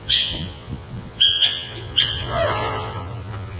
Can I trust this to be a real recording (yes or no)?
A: no